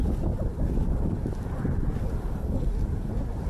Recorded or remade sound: recorded